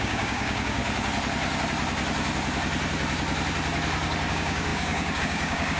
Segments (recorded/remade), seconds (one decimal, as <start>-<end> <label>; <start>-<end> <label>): 0.0-0.8 remade; 0.8-4.3 recorded; 4.3-5.8 remade